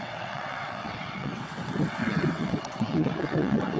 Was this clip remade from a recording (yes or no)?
yes